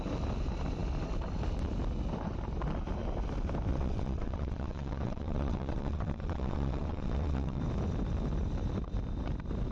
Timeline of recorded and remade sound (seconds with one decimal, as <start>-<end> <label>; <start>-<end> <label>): 0.0-3.7 recorded; 3.7-7.6 remade; 7.6-9.7 recorded